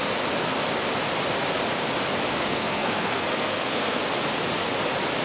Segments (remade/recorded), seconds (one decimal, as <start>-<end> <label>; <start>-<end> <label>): 0.0-2.3 recorded; 2.3-4.0 remade; 4.0-5.2 recorded